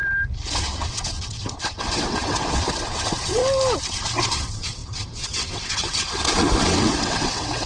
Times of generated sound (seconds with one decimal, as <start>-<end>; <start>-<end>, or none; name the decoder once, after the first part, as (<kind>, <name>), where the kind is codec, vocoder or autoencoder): 0.5-3.4 (vocoder, WaveNeXt); 3.9-7.7